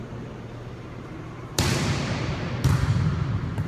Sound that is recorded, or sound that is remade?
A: remade